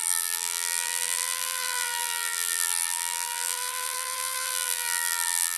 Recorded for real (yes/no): no